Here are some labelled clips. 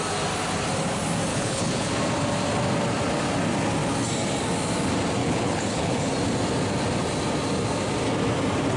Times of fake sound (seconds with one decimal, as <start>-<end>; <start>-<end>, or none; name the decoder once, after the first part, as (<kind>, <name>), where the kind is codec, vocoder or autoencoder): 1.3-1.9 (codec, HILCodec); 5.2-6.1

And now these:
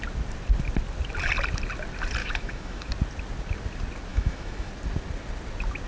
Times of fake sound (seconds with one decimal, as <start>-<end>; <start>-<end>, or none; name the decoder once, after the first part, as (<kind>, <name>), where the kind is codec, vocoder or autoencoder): 2.2-2.9 (autoencoder, DAC-VAE); 4.1-4.7

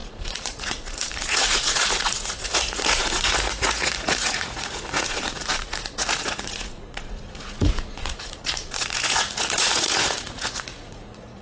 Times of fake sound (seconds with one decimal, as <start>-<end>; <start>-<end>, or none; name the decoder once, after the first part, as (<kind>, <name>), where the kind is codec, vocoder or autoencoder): 0.0-11.4 (vocoder, Vocos)

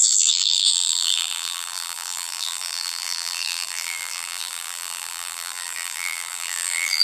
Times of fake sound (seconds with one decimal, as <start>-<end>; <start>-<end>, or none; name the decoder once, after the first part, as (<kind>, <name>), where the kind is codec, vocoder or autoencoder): 0.0-7.0 (vocoder, BigVGAN v2)